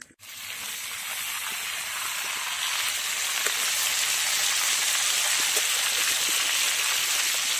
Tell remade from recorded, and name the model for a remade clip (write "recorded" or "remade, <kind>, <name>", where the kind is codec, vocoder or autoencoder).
recorded